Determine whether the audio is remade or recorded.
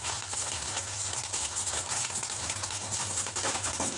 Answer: remade